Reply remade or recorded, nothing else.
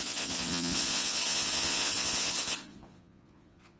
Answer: remade